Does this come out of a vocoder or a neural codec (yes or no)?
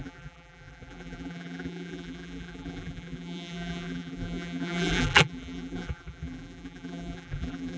yes